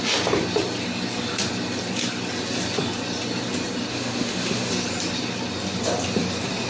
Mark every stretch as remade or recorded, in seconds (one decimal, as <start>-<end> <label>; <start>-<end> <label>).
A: 0.0-3.9 recorded; 3.9-4.7 remade; 4.7-6.7 recorded